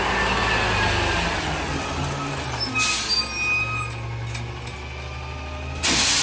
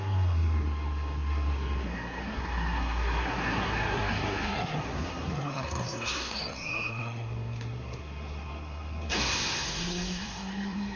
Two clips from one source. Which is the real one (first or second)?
first